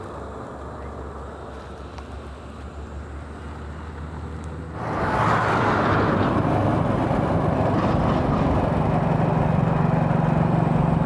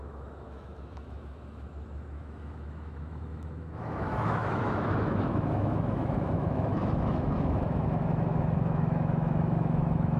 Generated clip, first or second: second